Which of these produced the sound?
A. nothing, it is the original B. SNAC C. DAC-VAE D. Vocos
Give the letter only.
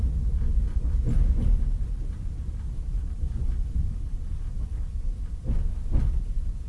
A